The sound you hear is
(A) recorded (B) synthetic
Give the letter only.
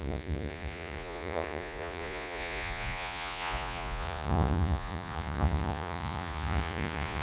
B